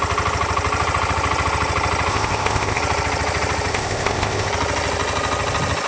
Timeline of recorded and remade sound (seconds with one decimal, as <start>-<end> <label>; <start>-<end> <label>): 0.0-2.1 recorded; 2.1-2.8 remade; 2.8-3.7 recorded; 3.7-4.5 remade; 4.5-5.9 recorded